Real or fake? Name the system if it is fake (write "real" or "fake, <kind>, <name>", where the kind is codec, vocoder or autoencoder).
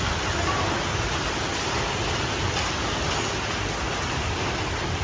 real